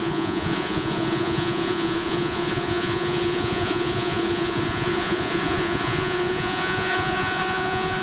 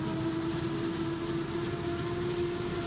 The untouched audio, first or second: second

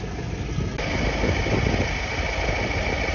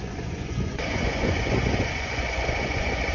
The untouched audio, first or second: first